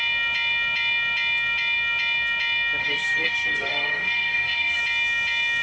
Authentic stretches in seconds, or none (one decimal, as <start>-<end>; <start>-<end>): 0.0-2.8; 4.8-5.6